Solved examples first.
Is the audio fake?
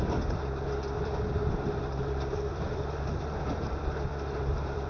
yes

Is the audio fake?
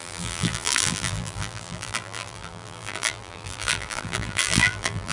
yes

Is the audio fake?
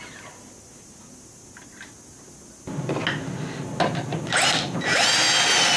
no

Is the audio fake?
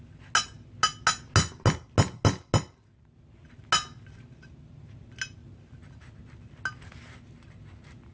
no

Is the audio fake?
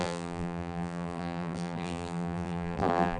yes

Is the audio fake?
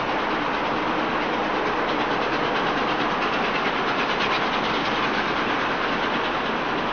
yes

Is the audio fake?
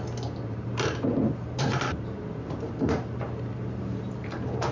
yes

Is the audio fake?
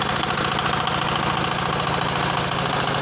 no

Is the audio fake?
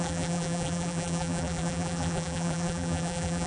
yes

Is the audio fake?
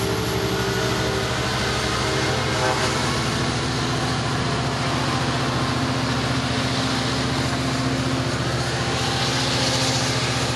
no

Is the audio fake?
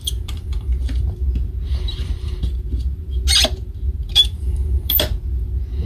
yes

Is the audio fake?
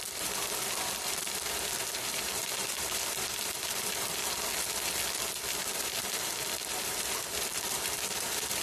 yes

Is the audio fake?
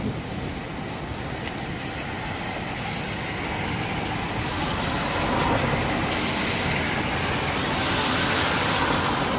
no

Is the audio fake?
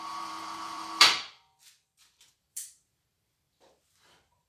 yes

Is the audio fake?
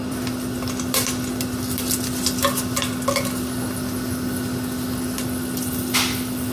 no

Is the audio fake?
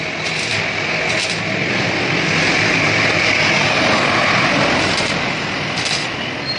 no